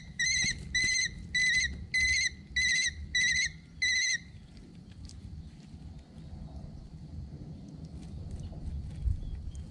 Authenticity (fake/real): real